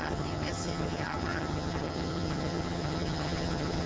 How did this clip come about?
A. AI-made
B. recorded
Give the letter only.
A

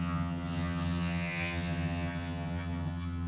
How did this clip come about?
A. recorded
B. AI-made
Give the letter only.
B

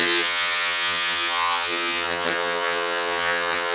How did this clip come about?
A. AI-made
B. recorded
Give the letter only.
A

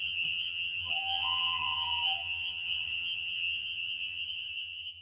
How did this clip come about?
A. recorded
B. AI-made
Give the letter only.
B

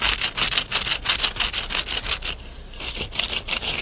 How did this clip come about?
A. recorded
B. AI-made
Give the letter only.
A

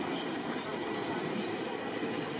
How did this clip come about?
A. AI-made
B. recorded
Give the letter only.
B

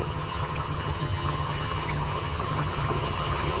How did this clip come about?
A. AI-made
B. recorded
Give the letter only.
A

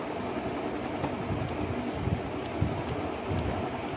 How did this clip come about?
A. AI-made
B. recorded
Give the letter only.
B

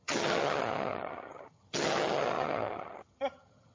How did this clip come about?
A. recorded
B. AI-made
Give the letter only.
B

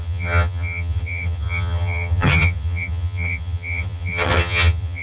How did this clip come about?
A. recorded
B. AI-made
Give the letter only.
B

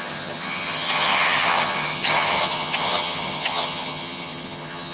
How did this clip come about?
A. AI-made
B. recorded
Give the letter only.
A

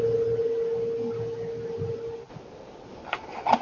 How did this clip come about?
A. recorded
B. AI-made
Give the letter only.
A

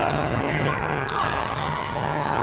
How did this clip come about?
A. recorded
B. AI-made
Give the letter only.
B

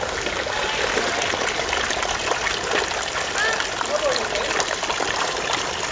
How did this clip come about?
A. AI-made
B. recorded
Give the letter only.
B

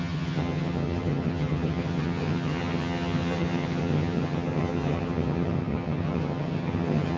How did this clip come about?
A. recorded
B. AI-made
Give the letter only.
B